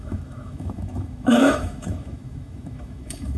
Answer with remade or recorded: remade